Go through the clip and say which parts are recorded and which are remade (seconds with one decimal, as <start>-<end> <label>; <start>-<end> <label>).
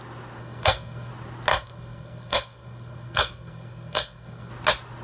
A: 0.0-0.4 recorded; 0.4-1.1 remade; 1.1-1.5 recorded; 1.5-4.5 remade; 4.5-5.0 recorded